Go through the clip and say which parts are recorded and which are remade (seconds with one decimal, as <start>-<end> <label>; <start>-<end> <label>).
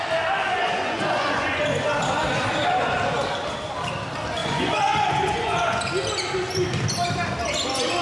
0.0-0.4 recorded; 0.4-1.6 remade; 1.6-4.4 recorded; 4.4-5.8 remade; 5.8-8.0 recorded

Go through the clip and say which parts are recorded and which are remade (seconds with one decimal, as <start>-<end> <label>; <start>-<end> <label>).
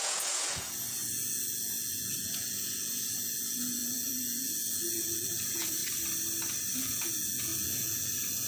0.0-5.8 remade; 5.8-6.8 recorded; 6.8-8.5 remade